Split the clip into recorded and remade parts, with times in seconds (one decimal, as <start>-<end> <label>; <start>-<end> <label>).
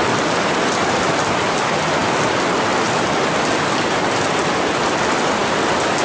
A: 0.0-6.0 recorded